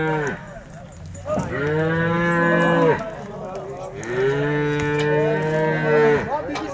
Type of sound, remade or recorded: recorded